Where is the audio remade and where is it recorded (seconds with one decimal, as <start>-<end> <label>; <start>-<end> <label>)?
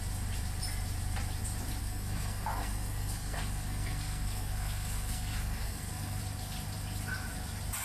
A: 0.0-1.8 recorded; 1.8-6.2 remade; 6.2-7.8 recorded